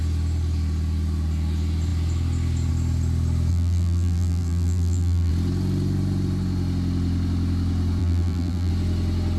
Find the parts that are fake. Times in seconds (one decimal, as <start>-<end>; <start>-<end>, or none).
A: 3.5-5.3; 8.0-8.7